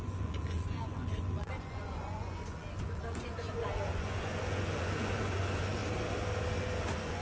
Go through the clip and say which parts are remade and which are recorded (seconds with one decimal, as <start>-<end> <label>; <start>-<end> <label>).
0.0-5.8 remade; 5.8-6.6 recorded; 6.6-7.2 remade